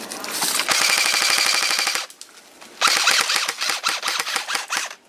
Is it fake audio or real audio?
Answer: real